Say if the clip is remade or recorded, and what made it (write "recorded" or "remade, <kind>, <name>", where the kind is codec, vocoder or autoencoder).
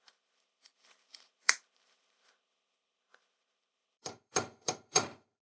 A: remade, vocoder, BigVGAN v2